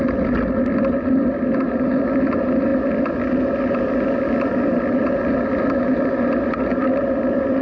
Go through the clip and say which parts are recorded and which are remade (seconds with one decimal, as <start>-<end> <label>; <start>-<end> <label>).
0.0-7.6 recorded